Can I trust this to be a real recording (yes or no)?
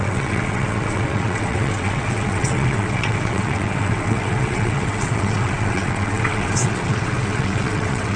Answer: no